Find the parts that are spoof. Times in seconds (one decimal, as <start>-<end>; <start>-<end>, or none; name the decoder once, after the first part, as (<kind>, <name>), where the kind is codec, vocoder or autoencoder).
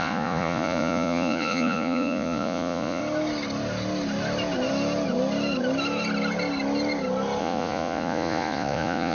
0.0-3.0 (vocoder, Vocos); 7.4-9.1